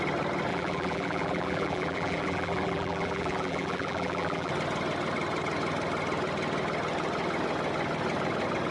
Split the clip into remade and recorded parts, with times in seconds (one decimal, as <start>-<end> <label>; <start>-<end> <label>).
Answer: 0.0-0.5 recorded; 0.5-4.5 remade; 4.5-8.7 recorded